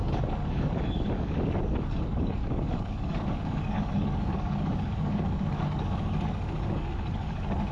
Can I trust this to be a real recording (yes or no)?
no